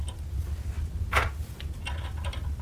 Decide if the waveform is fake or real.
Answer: real